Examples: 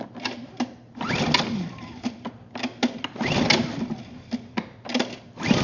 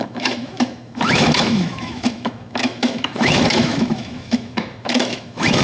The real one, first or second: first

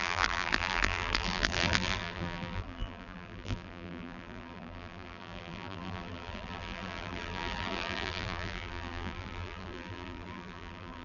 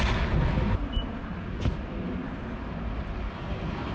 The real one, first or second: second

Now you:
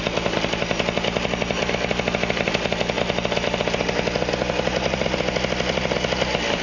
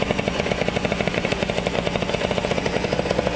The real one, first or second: first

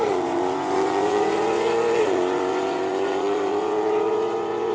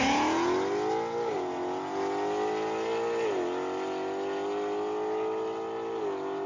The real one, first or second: second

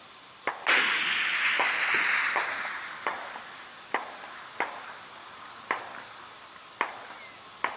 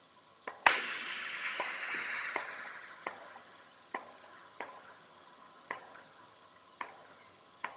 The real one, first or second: first